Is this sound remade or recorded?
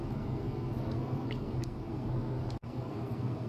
remade